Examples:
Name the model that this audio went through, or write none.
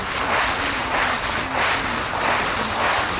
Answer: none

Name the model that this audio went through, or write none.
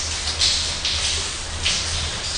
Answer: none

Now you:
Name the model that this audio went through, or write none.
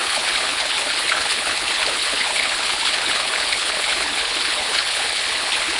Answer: codec, HILCodec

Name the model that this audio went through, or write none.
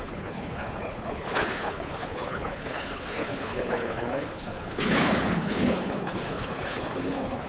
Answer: codec, HILCodec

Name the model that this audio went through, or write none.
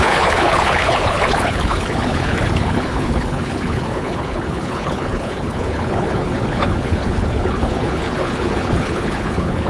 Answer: codec, HILCodec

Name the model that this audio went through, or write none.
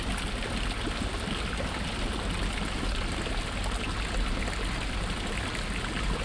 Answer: none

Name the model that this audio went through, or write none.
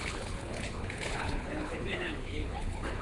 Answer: codec, HILCodec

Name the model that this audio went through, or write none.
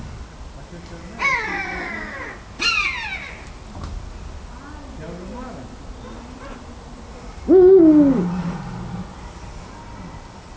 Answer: none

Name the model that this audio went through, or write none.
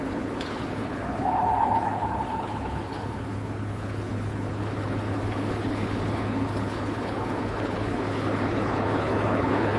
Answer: codec, HILCodec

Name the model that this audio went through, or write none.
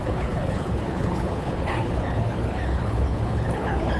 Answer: codec, HILCodec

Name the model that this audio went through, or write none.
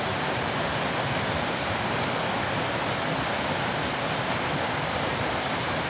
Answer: none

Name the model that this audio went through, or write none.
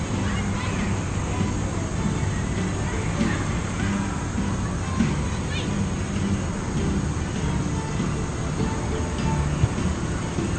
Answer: none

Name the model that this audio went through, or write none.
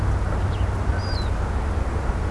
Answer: none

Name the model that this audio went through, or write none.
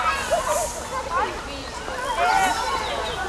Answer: none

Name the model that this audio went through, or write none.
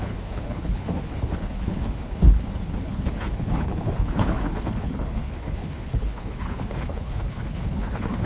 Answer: codec, HILCodec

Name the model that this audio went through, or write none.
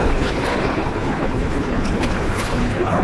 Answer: codec, HILCodec